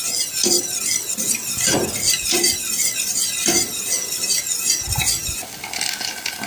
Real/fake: real